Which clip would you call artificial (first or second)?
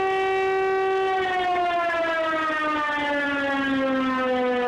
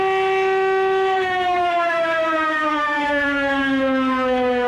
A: second